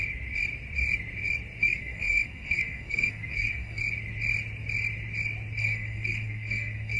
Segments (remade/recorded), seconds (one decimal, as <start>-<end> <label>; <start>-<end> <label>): 0.0-1.6 recorded; 1.6-3.8 remade; 3.8-5.6 recorded; 5.6-7.0 remade